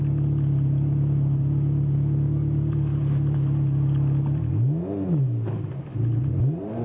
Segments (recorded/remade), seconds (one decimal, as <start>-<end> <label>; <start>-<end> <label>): 0.0-6.8 recorded